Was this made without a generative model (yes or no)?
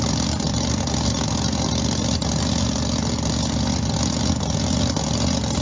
yes